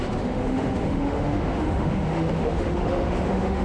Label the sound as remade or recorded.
remade